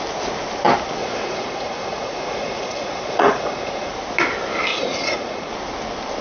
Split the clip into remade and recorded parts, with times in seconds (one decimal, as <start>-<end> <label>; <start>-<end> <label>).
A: 0.0-1.0 recorded; 1.0-3.9 remade; 3.9-4.7 recorded; 4.7-5.5 remade; 5.5-6.2 recorded